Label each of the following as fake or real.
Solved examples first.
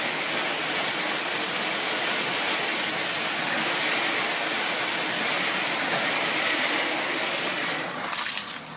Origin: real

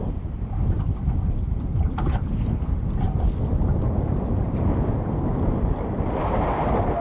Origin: real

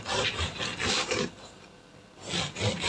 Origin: real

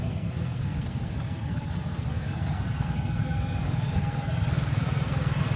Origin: fake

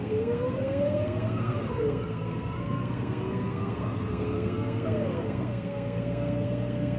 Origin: fake